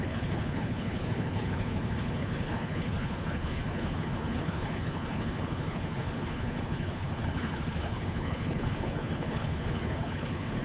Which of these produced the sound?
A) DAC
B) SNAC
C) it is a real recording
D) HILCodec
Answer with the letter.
D